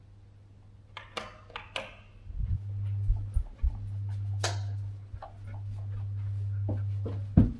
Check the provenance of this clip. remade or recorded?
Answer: recorded